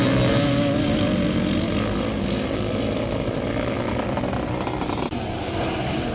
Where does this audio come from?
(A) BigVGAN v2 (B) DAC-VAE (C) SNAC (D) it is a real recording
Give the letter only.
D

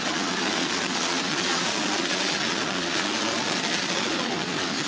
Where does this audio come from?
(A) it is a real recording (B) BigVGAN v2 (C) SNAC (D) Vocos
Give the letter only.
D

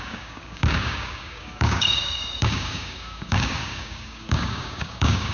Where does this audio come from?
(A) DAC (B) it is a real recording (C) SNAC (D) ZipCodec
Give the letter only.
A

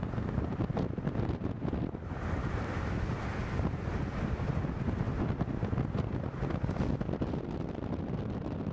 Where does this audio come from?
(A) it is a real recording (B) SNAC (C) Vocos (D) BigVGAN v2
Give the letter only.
A